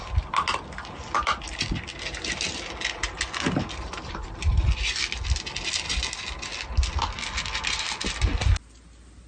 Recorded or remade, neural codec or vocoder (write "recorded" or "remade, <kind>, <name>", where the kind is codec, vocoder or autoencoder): recorded